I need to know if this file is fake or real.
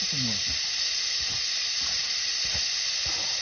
real